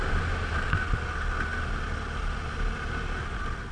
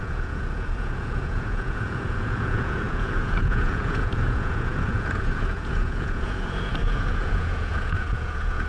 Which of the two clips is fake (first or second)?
second